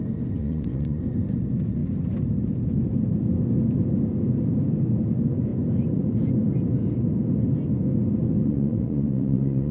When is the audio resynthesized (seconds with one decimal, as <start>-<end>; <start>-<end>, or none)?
0.4-1.0; 8.4-9.7